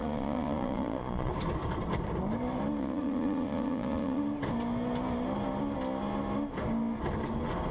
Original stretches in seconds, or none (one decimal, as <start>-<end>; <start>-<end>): 1.3-2.8; 4.2-7.7